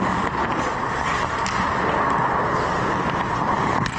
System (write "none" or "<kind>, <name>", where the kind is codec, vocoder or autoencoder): none